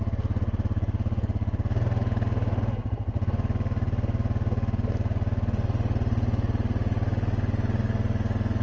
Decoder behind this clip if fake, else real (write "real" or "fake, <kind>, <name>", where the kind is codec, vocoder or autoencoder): real